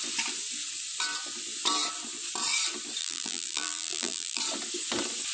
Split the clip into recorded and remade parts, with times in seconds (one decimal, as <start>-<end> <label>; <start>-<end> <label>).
0.0-3.0 recorded; 3.0-4.4 remade; 4.4-5.3 recorded